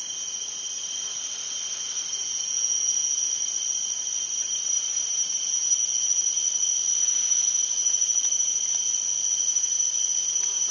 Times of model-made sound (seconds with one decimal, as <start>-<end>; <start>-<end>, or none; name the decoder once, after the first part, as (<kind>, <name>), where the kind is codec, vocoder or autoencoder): 2.2-3.3 (vocoder, Vocos)